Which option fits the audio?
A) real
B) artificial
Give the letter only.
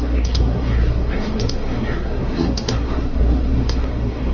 B